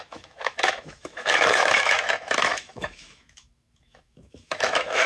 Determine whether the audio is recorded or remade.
remade